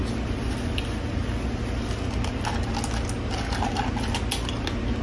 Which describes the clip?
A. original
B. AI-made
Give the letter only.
A